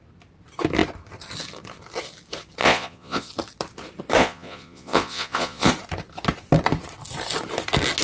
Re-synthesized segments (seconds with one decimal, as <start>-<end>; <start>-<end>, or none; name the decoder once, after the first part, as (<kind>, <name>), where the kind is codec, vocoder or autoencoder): 2.6-3.3 (vocoder, Vocos); 4.2-5.7